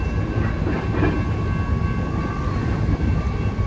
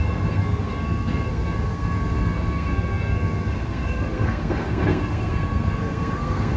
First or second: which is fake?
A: second